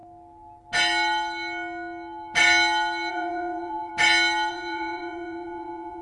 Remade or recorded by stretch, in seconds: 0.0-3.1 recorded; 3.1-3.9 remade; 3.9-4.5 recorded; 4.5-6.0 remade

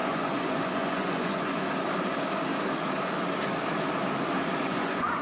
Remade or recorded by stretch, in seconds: 0.0-1.6 remade; 1.6-4.6 recorded; 4.6-5.2 remade